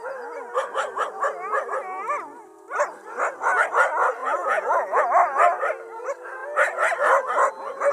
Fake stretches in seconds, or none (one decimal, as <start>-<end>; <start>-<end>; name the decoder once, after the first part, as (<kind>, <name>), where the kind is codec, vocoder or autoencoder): 4.2-5.0 (vocoder, Vocos)